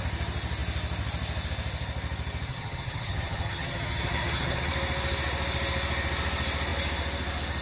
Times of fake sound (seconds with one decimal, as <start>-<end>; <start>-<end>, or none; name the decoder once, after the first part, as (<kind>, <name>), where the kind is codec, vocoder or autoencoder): 2.5-4.7 (vocoder, HiFi-GAN)